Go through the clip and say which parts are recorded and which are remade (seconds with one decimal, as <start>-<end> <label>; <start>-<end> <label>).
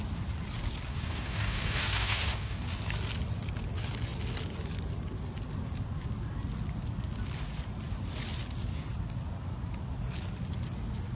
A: 0.0-0.9 recorded; 0.9-2.6 remade; 2.6-11.1 recorded